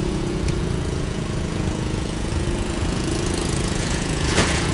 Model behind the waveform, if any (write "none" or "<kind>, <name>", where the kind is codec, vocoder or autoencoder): vocoder, Vocos